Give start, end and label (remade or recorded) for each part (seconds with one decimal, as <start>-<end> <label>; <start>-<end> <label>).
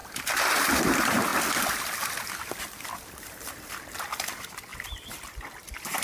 0.0-6.0 recorded